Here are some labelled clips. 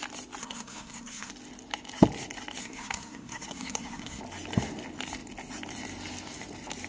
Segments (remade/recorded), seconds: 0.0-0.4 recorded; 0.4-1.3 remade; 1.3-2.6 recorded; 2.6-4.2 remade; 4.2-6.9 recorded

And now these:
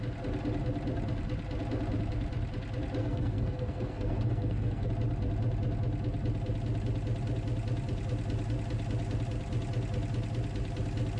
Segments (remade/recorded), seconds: 0.0-3.0 recorded; 3.0-4.9 remade; 4.9-11.2 recorded

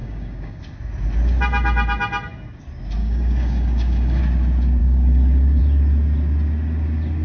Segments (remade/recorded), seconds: 0.0-0.6 remade; 0.6-3.0 recorded; 3.0-4.2 remade; 4.2-4.8 recorded; 4.8-5.6 remade; 5.6-7.2 recorded

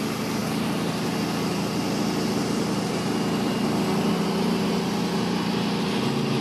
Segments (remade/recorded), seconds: 0.0-6.4 recorded

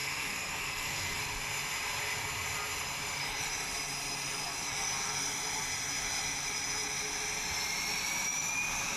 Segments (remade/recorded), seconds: 0.0-1.2 remade; 1.2-9.0 recorded

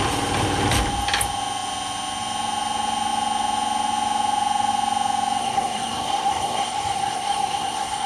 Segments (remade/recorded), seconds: 0.0-5.4 recorded; 5.4-8.1 remade

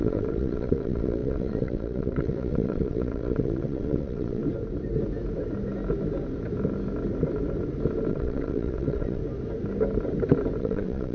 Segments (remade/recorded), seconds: 0.0-4.4 remade; 4.4-8.1 recorded; 8.1-9.2 remade; 9.2-10.6 recorded; 10.6-11.1 remade

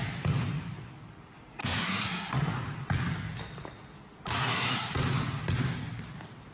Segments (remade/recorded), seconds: 0.0-1.6 recorded; 1.6-2.5 remade; 2.5-4.4 recorded; 4.4-4.9 remade; 4.9-6.5 recorded